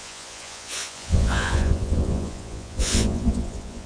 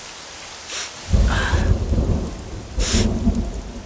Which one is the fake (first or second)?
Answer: first